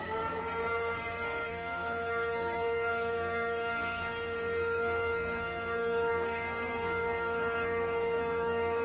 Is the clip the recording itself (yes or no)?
no